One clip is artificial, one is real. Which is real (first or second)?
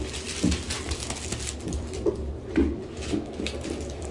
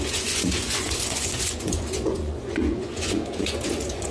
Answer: first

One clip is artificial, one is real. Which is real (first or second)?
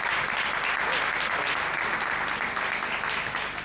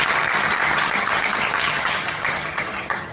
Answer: first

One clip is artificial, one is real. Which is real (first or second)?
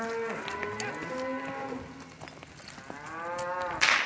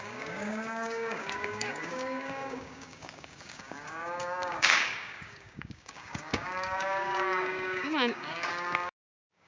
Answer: first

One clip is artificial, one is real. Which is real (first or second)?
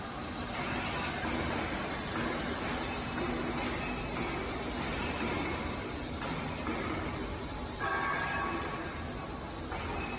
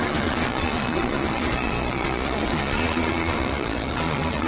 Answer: first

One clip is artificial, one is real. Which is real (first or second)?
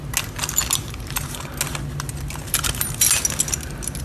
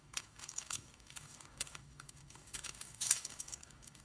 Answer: first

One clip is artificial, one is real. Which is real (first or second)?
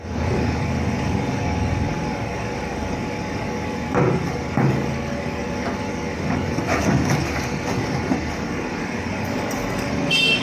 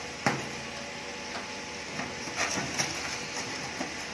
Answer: second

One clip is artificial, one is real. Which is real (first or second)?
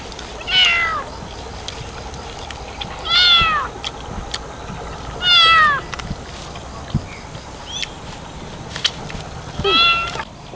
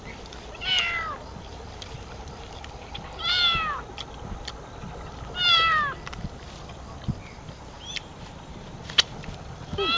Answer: first